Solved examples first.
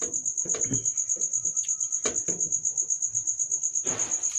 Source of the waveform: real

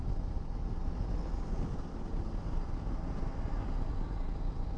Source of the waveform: real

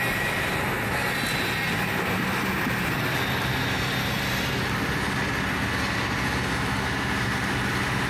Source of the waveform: real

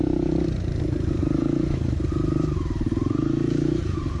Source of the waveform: fake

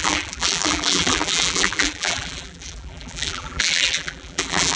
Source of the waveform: fake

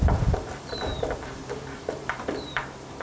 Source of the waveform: fake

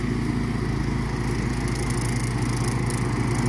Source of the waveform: real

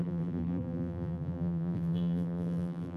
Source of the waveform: fake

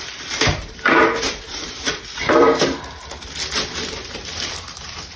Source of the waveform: fake